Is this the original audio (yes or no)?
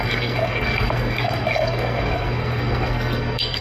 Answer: no